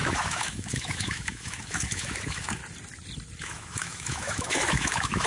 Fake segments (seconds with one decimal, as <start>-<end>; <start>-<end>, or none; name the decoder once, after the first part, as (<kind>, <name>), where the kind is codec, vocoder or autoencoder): 0.0-2.6 (autoencoder, DAC-VAE); 3.4-5.3